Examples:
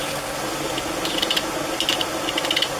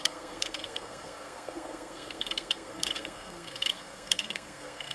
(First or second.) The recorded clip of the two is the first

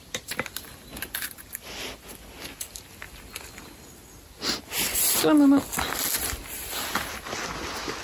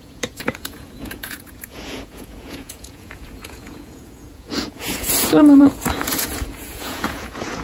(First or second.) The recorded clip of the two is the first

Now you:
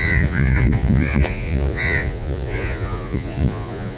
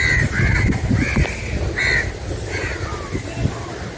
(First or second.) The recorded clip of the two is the second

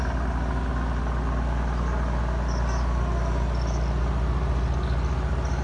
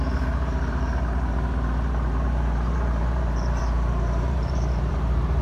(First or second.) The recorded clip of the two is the first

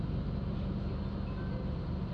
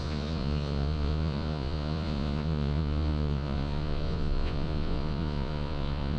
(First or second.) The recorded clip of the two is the first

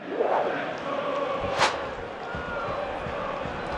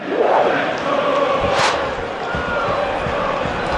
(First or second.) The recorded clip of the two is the first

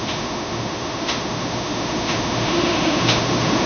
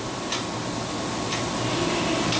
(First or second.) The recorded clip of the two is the second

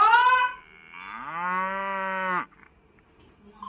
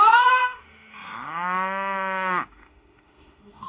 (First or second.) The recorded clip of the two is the first